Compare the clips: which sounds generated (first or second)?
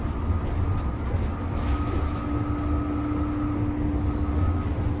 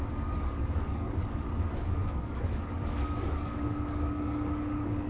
second